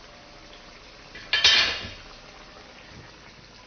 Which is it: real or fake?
real